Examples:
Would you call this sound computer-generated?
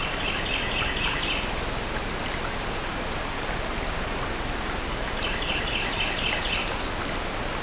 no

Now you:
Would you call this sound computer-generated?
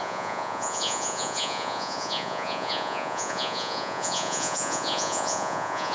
yes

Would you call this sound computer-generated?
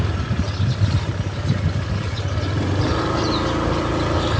no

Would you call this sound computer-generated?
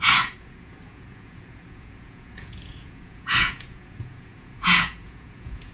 yes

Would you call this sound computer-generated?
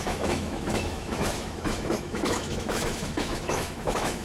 yes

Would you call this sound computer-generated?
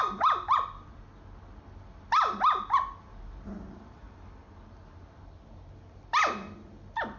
no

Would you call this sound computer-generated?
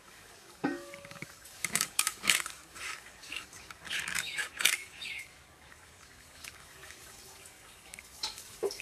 yes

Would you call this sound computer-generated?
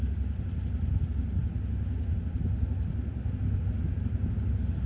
no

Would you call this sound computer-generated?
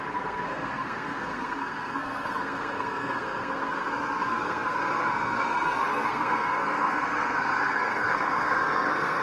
yes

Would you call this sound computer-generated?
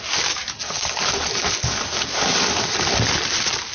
no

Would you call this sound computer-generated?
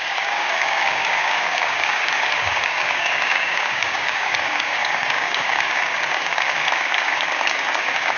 yes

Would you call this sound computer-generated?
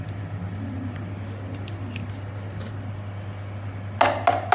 no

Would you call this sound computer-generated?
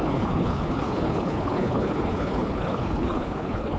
yes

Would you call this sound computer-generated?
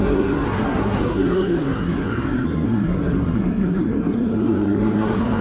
yes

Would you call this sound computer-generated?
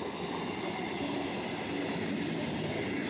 no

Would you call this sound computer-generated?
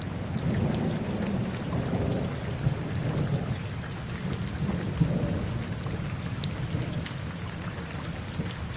no